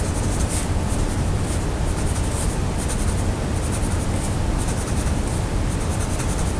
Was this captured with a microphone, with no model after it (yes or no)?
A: no